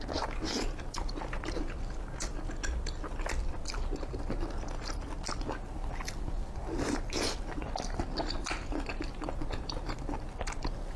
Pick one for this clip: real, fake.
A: real